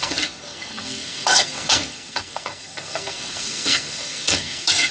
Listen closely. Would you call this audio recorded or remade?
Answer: remade